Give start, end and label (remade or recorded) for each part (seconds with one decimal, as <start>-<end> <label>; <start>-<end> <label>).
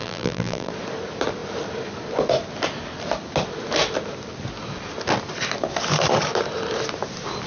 0.0-0.7 remade; 0.7-7.5 recorded